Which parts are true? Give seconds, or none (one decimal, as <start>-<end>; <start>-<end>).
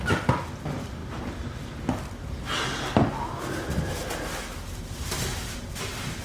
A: 0.0-6.2